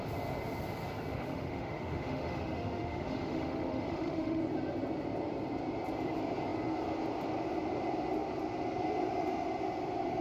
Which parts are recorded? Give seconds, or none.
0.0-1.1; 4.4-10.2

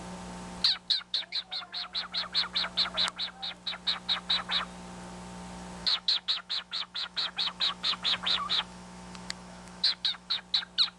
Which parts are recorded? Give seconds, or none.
0.0-0.9; 1.7-5.8; 10.4-11.0